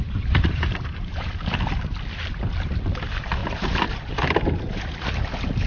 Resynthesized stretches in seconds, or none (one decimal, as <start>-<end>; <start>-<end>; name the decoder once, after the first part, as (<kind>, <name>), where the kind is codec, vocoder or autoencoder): 0.0-1.3 (vocoder, BigVGAN v2); 3.4-4.1